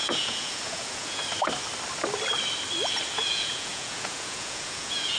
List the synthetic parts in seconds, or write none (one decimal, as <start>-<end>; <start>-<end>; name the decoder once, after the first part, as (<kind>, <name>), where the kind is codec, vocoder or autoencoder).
0.0-1.2 (vocoder, Vocos); 3.1-5.2